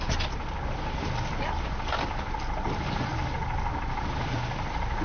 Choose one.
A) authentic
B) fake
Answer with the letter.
A